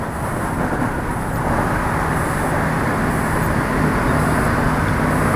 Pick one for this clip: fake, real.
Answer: real